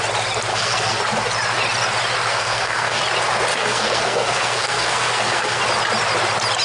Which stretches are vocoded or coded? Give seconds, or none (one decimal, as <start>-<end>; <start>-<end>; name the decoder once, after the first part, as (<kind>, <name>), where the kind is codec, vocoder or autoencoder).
0.5-1.0 (codec, SNAC); 2.3-3.0; 3.5-5.6